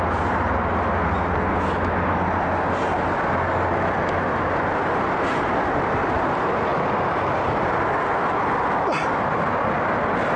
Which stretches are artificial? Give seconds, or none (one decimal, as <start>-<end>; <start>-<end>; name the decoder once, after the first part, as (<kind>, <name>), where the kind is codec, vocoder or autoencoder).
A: none